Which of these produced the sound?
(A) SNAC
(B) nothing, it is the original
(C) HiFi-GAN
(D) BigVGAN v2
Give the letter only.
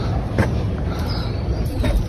D